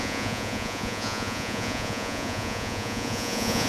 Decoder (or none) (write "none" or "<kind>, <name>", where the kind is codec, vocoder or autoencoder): vocoder, Vocos